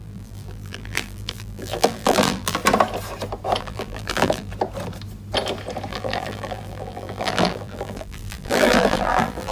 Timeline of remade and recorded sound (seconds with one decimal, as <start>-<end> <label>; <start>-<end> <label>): 0.0-2.6 remade; 2.6-3.6 recorded; 3.6-4.5 remade; 4.5-5.9 recorded; 5.9-9.5 remade